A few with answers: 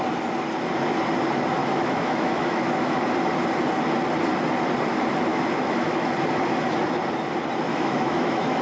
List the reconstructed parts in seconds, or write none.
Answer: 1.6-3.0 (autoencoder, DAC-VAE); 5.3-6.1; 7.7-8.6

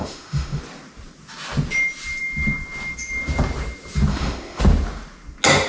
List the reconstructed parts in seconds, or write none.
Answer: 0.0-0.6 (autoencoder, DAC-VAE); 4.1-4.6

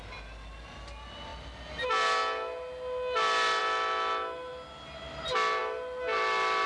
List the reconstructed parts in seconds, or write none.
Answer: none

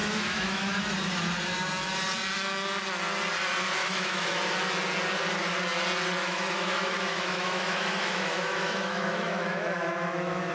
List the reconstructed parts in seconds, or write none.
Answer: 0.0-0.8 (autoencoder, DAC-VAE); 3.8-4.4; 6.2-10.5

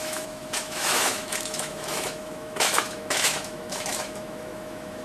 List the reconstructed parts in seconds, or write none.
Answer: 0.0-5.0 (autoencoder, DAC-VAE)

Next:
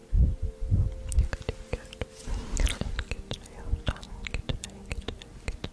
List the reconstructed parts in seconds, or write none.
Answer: none

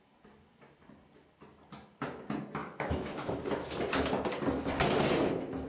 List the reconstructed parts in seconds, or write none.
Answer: 2.6-3.4 (autoencoder, DAC-VAE)